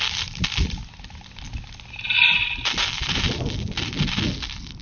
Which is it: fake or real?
real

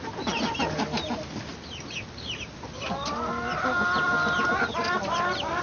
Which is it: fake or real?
real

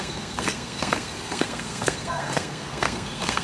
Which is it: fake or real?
fake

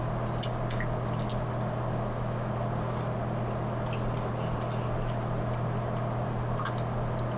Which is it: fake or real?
real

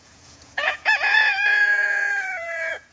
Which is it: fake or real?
fake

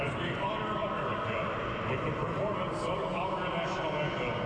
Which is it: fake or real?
real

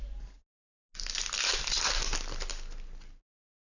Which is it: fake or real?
real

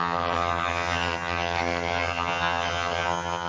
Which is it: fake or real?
fake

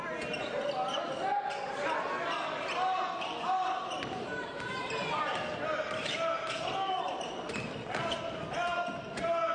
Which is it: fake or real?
real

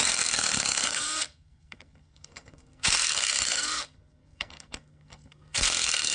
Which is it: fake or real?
fake